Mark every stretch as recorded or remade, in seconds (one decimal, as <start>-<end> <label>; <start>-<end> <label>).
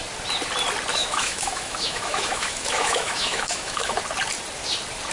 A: 0.0-0.9 recorded; 0.9-4.0 remade; 4.0-5.1 recorded